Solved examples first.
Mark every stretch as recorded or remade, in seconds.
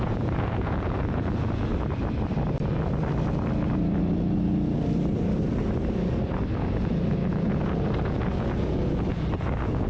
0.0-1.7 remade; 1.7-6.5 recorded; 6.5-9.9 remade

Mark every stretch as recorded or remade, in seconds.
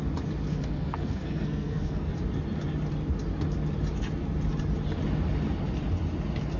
0.0-0.5 recorded; 0.5-2.1 remade; 2.1-6.6 recorded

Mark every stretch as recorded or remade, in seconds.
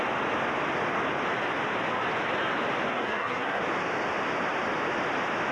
0.0-2.9 recorded; 2.9-3.6 remade; 3.6-5.5 recorded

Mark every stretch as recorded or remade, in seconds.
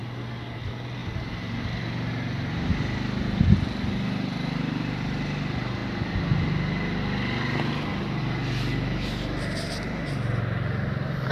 0.0-11.3 recorded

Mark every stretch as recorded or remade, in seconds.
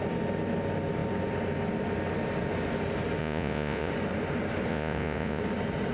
0.0-3.2 recorded; 3.2-3.9 remade; 3.9-4.7 recorded; 4.7-5.4 remade; 5.4-5.9 recorded